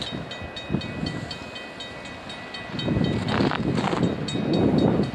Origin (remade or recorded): recorded